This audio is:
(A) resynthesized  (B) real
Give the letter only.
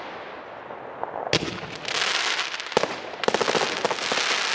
B